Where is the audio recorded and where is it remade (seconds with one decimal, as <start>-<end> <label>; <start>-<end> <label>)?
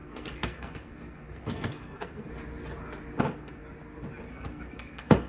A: 0.0-2.3 remade; 2.3-3.2 recorded; 3.2-3.6 remade; 3.6-4.3 recorded; 4.3-5.3 remade